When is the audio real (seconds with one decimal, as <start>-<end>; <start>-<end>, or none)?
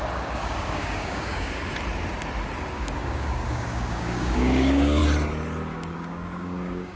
1.7-2.7; 5.0-5.7